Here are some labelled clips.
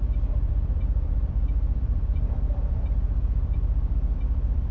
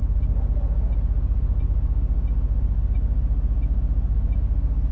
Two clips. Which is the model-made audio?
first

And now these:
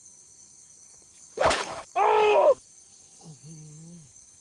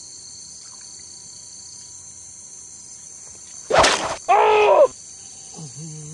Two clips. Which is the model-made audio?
first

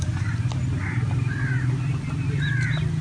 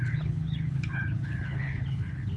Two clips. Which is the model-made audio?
second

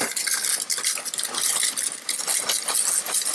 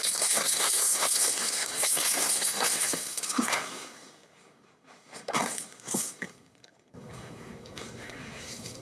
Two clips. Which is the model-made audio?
second